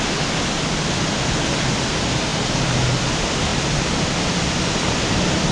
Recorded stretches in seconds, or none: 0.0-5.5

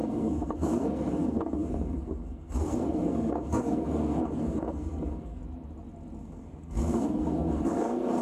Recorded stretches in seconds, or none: 5.4-6.2